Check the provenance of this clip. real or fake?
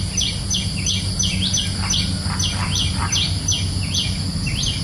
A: real